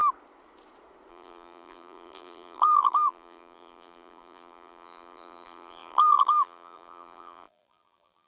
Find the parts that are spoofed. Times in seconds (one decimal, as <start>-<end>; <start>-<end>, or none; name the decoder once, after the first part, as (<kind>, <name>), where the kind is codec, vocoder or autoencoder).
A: 1.1-8.3 (vocoder, BigVGAN v2)